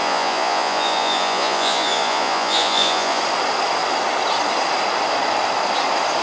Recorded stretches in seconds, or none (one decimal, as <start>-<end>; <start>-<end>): 3.2-6.2